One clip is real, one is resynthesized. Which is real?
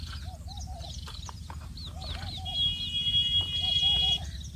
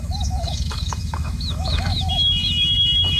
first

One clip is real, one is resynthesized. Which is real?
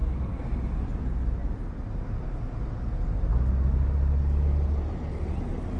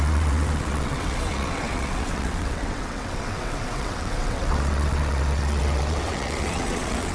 first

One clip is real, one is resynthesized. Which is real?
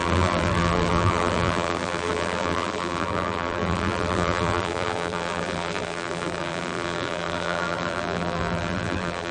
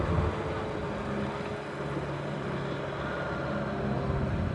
second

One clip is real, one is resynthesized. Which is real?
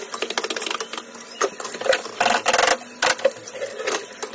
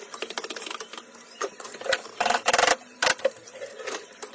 first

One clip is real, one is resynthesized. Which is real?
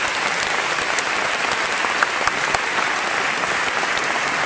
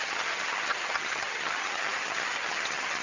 first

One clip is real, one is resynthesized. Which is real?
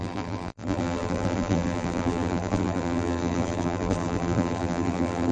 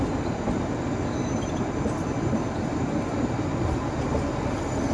second